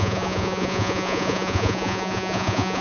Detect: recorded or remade remade